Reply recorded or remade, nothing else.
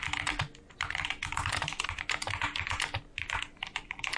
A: recorded